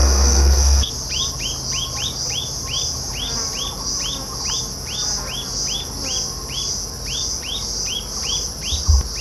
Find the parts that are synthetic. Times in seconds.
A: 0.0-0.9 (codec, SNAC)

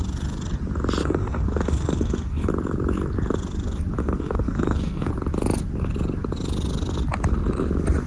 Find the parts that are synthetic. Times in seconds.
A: 1.0-2.5 (codec, SNAC); 4.0-5.1

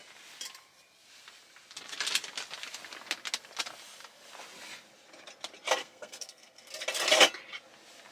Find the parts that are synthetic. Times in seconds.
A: 5.8-6.7 (codec, SNAC)

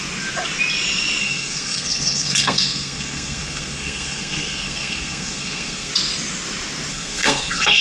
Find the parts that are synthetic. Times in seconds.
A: 1.2-5.9 (codec, SNAC); 6.9-7.8

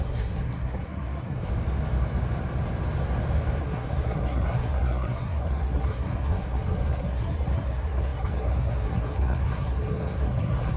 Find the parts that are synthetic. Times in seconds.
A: 0.0-1.5 (codec, SNAC); 3.6-10.8

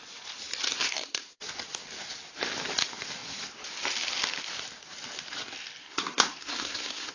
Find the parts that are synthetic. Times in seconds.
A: 0.8-1.3 (codec, SNAC); 5.8-7.1

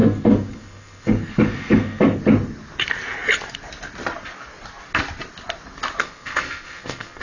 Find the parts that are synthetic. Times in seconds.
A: 0.0-2.2 (codec, SNAC); 6.0-7.2